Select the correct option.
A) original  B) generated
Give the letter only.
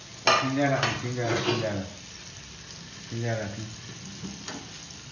A